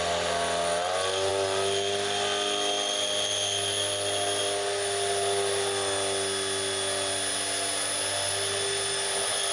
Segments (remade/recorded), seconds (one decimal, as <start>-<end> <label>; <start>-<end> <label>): 0.0-9.5 recorded